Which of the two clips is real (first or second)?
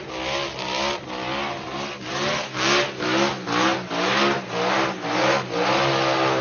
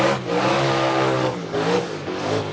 first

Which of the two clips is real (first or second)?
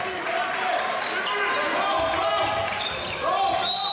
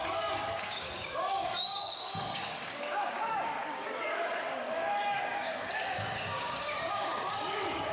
first